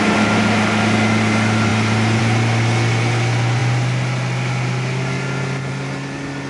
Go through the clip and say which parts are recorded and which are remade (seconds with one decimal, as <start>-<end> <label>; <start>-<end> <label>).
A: 0.0-6.5 recorded